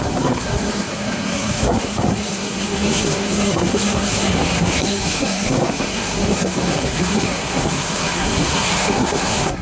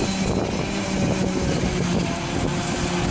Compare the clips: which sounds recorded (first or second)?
second